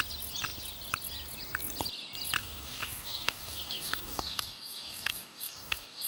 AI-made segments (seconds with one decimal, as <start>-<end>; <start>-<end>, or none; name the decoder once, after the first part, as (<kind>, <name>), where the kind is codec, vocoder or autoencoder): 2.4-6.1 (codec, DAC)